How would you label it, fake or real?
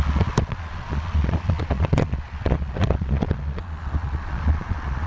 fake